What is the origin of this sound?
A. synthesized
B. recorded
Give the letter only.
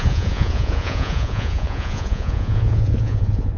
A